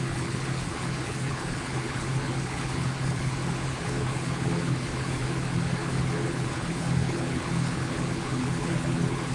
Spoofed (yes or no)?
yes